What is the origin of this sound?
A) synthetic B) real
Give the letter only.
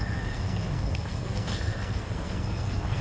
A